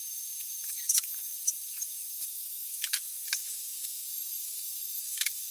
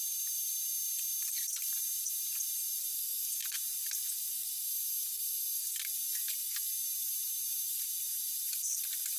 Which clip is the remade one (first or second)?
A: first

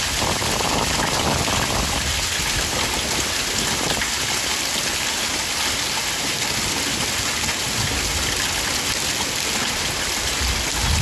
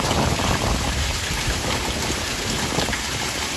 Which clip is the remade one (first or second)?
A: second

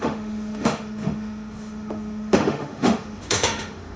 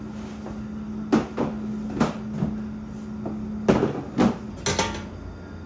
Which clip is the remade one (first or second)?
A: first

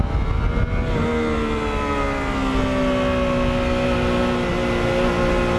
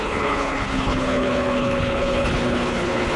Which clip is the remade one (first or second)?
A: second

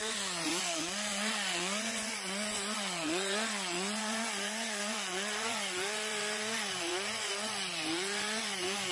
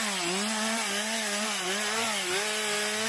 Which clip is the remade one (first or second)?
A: first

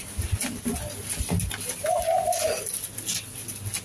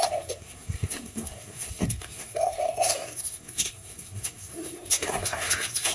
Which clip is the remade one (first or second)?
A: second